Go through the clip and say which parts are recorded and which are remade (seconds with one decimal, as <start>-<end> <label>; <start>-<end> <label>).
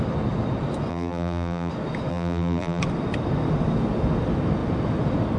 0.0-0.9 recorded; 0.9-1.7 remade; 1.7-2.1 recorded; 2.1-2.8 remade; 2.8-5.4 recorded